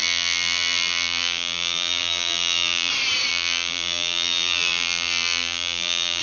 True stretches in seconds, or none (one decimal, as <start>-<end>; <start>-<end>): 2.9-3.3